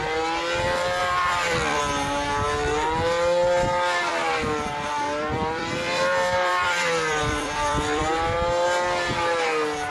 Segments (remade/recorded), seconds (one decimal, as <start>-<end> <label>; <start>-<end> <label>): 0.0-1.0 recorded; 1.0-1.8 remade; 1.8-4.1 recorded; 4.1-8.0 remade; 8.0-9.9 recorded